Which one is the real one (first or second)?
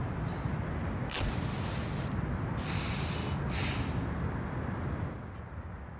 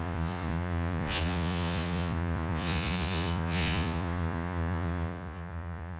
first